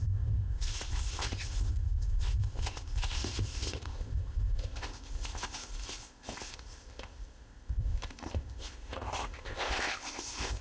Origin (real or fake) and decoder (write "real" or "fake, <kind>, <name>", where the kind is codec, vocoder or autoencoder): fake, codec, ZipCodec